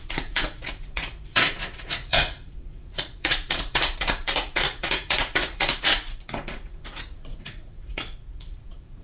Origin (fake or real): fake